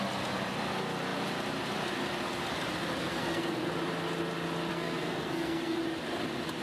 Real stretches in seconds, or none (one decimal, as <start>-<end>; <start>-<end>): 0.0-3.0; 3.7-4.7; 5.8-6.6